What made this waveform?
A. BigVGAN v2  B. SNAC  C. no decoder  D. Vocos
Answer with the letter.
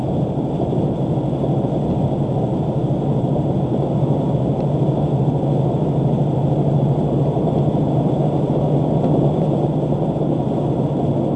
C